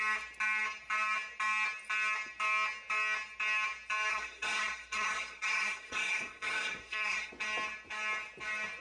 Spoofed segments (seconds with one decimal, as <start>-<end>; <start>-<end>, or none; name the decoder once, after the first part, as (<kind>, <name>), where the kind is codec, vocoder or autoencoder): 4.1-7.3 (codec, SNAC)

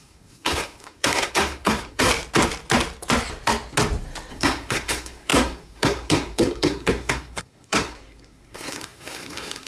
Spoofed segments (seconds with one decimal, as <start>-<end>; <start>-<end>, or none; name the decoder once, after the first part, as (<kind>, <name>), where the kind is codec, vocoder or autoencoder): 0.0-2.1 (codec, SNAC); 4.3-9.7

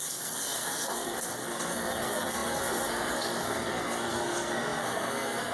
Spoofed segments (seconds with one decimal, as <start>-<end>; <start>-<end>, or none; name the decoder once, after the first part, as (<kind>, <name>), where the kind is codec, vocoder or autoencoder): 0.0-5.5 (codec, SNAC)